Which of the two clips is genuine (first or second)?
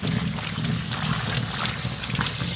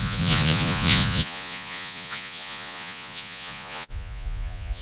first